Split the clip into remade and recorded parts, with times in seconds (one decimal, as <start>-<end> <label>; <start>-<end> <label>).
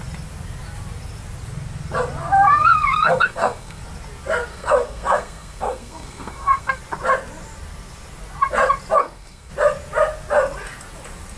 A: 0.0-2.5 recorded; 2.5-3.8 remade; 3.8-4.5 recorded; 4.5-6.8 remade; 6.8-9.0 recorded; 9.0-9.5 remade; 9.5-11.4 recorded